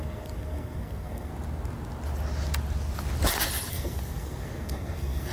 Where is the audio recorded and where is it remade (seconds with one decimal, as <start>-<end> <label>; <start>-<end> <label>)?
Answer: 0.0-1.3 remade; 1.3-3.7 recorded; 3.7-5.3 remade